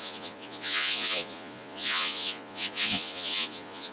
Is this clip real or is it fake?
fake